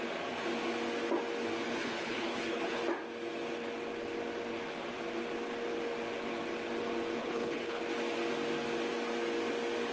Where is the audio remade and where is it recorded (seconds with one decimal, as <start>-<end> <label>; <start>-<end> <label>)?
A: 0.0-1.7 recorded; 1.7-2.8 remade; 2.8-7.2 recorded; 7.2-7.8 remade; 7.8-9.9 recorded